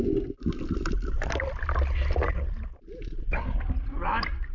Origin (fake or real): real